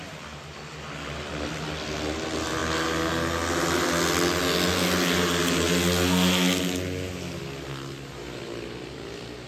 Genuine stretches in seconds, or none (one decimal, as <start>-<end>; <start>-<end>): 0.0-9.5